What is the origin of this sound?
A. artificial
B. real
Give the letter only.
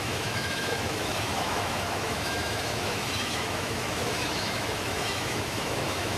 A